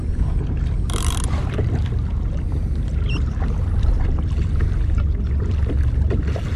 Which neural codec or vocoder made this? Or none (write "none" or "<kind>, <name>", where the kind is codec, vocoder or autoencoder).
none